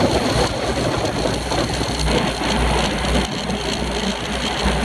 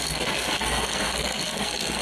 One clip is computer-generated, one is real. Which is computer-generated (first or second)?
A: second